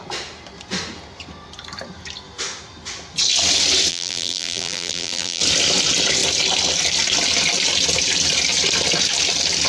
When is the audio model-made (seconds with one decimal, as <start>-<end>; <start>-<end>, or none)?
3.9-5.4